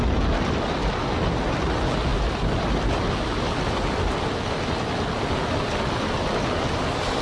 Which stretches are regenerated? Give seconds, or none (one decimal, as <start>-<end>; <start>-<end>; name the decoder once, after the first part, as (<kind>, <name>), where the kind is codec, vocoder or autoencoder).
none